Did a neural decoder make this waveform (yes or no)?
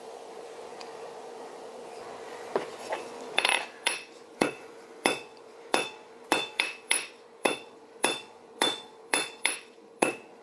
yes